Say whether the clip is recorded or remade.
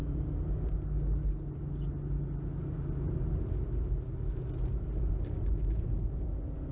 recorded